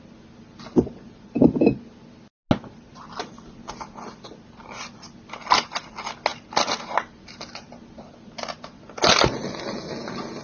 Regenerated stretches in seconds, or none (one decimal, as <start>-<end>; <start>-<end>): none